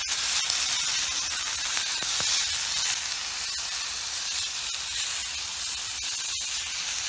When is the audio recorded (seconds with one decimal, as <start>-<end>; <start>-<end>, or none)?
0.0-7.1